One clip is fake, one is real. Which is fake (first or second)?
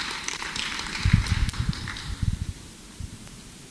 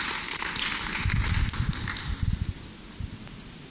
first